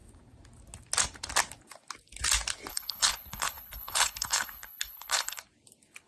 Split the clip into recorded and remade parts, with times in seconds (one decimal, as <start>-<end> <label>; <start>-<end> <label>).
0.0-2.7 recorded; 2.7-5.4 remade; 5.4-6.1 recorded